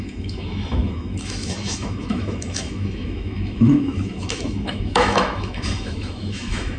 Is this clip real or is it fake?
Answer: fake